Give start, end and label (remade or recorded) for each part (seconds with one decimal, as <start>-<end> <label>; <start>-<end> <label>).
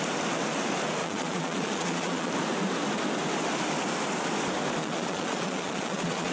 0.0-1.0 recorded; 1.0-2.3 remade; 2.3-4.8 recorded; 4.8-6.3 remade